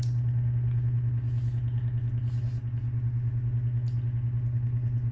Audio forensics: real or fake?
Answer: real